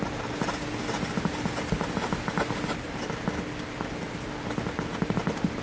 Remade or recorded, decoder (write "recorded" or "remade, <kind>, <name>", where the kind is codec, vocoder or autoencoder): recorded